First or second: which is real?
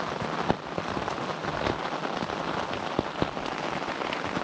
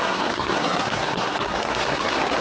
first